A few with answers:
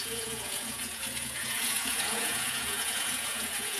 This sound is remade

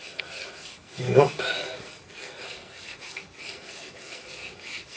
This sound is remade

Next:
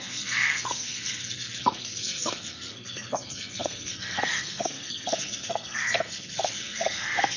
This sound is remade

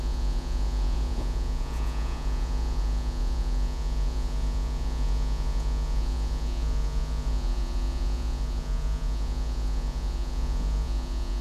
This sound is remade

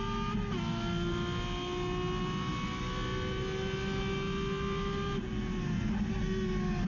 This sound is recorded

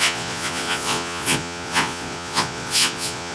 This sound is remade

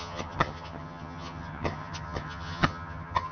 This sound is remade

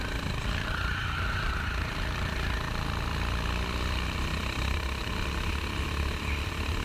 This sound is remade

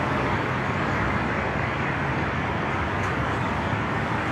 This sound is remade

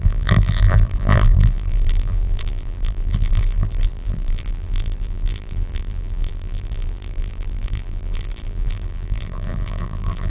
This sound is remade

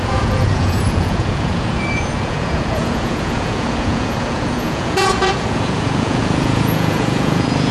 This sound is remade